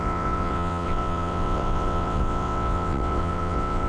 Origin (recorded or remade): remade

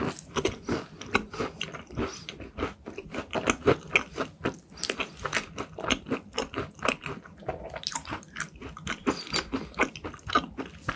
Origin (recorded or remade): recorded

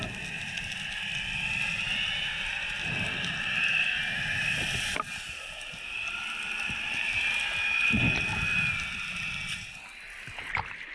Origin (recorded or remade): recorded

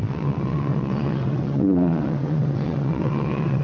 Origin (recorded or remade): remade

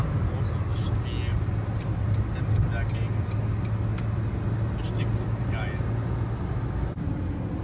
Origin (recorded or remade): recorded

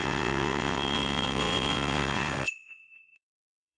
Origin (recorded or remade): remade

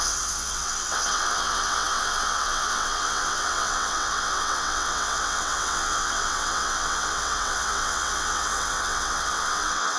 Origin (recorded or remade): remade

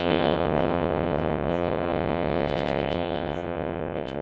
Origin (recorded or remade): remade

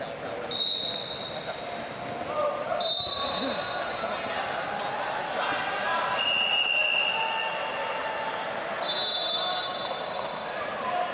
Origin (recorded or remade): recorded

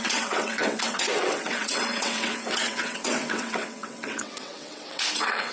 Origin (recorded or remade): remade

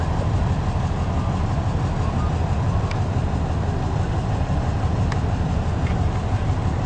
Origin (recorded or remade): recorded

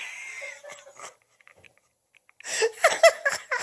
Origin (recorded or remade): recorded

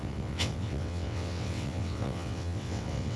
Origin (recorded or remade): remade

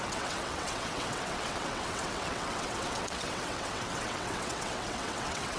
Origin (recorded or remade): remade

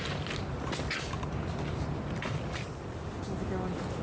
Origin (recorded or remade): recorded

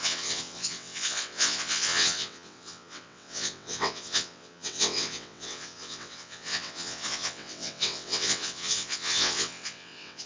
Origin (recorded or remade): remade